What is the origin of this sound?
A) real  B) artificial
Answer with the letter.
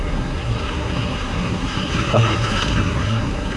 B